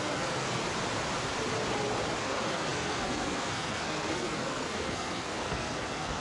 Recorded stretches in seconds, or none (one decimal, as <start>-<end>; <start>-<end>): 0.6-2.2